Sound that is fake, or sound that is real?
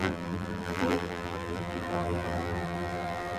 fake